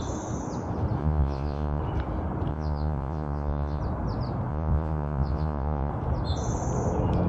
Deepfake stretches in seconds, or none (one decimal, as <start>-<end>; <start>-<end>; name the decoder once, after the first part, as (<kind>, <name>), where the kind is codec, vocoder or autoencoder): 1.0-1.8 (vocoder, Vocos); 2.5-3.8; 4.5-5.9